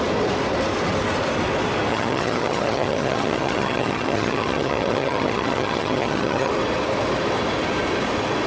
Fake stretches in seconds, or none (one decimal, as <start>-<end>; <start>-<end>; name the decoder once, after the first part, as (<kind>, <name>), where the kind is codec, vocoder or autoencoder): 1.9-6.5 (vocoder, HiFi-GAN)